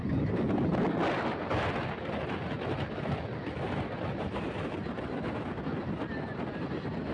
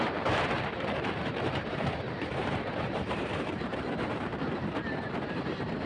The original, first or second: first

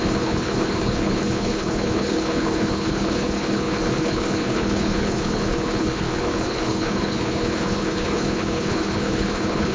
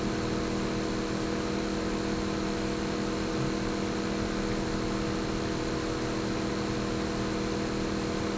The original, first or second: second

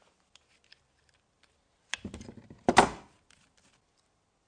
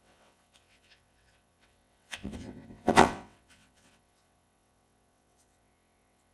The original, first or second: first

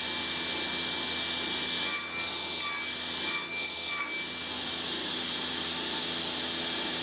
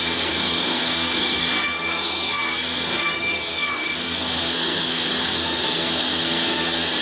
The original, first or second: first